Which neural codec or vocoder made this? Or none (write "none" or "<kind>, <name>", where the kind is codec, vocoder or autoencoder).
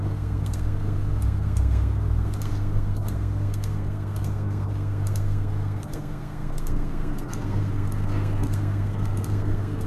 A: codec, SNAC